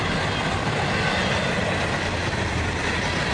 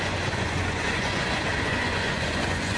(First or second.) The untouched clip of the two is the first